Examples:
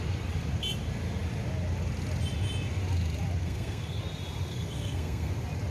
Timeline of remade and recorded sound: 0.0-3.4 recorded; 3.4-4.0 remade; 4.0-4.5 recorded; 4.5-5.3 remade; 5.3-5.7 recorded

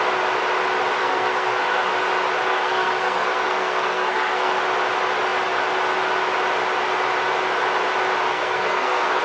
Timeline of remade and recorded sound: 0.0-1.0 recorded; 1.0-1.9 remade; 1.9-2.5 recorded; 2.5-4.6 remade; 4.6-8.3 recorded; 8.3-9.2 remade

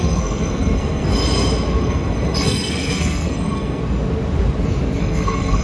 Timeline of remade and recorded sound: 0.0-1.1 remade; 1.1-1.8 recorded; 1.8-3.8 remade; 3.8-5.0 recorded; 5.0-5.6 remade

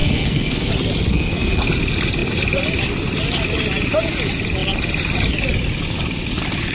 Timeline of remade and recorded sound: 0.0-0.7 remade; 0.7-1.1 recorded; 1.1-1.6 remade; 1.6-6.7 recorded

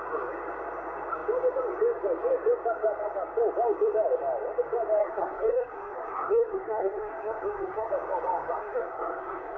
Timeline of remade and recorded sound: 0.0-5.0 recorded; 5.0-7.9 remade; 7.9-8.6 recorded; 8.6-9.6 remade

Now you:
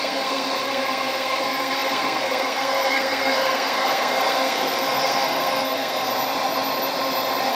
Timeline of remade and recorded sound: 0.0-6.1 remade; 6.1-7.5 recorded

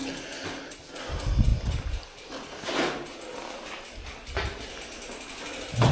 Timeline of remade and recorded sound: 0.0-5.9 recorded

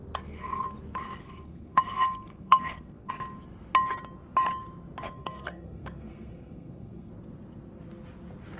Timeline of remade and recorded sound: 0.0-1.2 recorded; 1.2-3.1 remade; 3.1-5.0 recorded; 5.0-7.1 remade; 7.1-8.6 recorded